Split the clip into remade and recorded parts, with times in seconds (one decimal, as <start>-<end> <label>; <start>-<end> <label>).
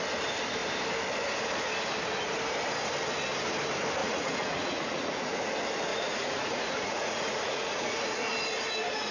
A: 0.0-4.0 recorded; 4.0-5.3 remade; 5.3-5.9 recorded; 5.9-8.3 remade; 8.3-9.1 recorded